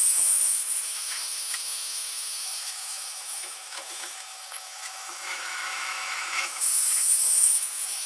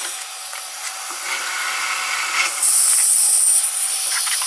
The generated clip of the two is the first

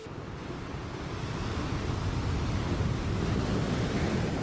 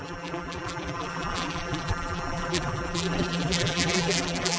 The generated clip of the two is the second